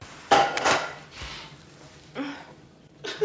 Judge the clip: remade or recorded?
remade